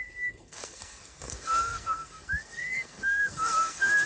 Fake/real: fake